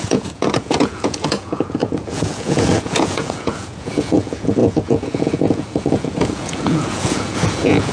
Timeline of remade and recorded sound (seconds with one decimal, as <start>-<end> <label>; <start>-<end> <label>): 0.0-7.9 remade